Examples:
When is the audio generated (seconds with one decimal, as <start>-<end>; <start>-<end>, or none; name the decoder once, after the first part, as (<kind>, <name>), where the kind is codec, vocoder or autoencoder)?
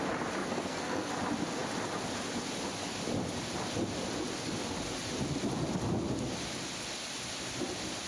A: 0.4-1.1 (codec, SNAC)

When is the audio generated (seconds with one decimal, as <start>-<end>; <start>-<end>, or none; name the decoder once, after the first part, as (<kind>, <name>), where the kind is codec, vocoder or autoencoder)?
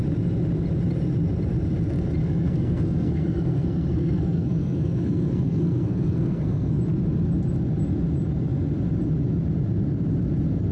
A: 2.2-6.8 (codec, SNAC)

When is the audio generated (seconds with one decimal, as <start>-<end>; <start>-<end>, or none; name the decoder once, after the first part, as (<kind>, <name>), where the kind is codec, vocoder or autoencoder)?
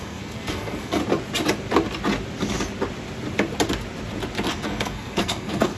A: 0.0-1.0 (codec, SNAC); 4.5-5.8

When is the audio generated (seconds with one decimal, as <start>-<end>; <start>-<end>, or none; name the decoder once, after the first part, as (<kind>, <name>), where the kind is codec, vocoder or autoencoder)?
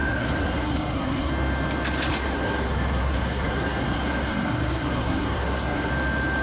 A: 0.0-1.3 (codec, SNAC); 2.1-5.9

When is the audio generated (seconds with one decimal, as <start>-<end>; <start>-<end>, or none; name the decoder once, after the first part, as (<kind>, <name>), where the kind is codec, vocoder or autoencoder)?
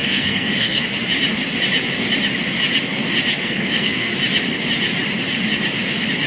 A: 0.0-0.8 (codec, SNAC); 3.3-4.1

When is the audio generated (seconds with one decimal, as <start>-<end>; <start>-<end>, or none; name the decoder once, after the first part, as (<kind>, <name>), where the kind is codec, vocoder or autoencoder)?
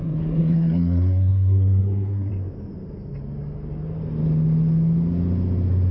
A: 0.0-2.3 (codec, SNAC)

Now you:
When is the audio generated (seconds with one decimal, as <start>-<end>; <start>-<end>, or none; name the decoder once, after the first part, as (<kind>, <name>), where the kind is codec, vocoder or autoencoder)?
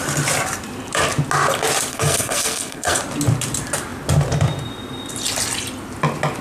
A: 1.9-3.0 (codec, SNAC)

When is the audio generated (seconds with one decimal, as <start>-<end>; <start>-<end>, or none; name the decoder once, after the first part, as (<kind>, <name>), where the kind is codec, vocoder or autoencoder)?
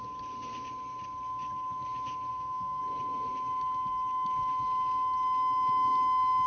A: 2.3-2.8 (codec, SNAC)